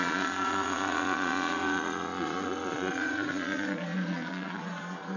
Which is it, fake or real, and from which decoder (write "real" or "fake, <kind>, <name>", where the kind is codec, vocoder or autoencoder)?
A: fake, vocoder, Vocos